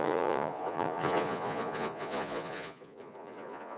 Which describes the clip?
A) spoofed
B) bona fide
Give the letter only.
A